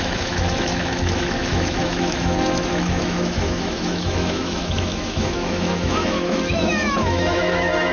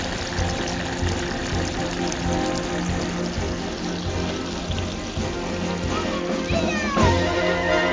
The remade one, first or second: first